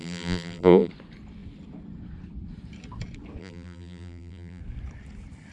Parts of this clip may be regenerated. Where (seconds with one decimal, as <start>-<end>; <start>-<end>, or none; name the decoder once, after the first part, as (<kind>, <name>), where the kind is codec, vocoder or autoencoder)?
0.0-0.9 (vocoder, BigVGAN v2); 3.4-4.6